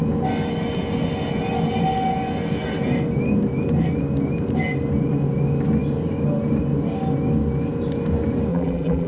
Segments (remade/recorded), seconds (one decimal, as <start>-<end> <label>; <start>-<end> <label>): 0.0-8.5 recorded; 8.5-9.1 remade